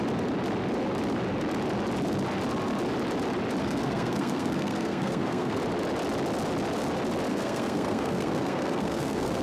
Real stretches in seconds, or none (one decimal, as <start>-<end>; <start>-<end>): 0.0-3.6; 5.6-7.3

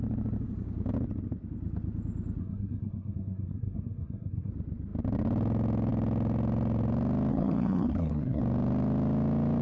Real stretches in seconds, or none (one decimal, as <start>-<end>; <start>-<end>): 0.0-2.4; 4.5-7.3; 8.4-9.6

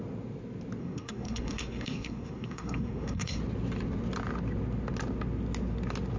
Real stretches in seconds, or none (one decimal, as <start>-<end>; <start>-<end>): 0.0-0.8; 3.4-6.2

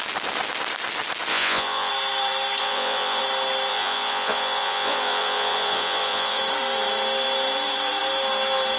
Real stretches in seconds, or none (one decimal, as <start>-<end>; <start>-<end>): 0.0-1.3; 1.9-2.6; 3.2-3.7; 6.4-8.8

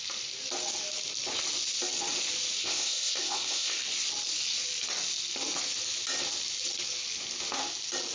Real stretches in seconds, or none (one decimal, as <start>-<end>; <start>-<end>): 0.0-2.6; 3.8-8.1

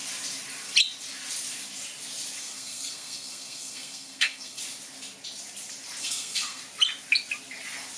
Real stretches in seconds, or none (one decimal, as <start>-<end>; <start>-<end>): 0.0-2.4; 4.6-6.0; 6.6-8.0

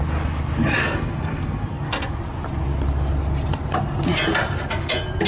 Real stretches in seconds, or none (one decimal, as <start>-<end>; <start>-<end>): 0.0-0.8; 1.8-5.3

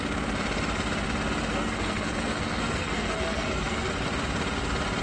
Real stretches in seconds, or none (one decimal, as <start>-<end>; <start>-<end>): 0.0-1.5; 3.9-5.0